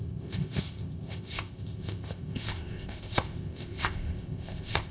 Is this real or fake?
fake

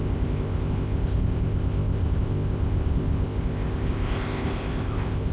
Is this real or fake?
fake